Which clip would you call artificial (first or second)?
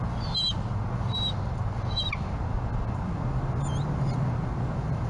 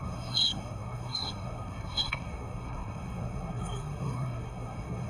second